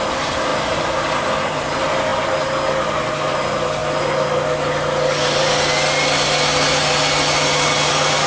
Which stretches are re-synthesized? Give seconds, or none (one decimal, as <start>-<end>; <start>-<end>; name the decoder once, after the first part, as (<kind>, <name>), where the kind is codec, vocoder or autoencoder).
none